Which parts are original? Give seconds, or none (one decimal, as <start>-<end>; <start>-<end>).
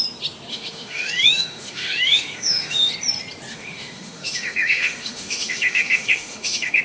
0.0-0.5; 2.9-3.5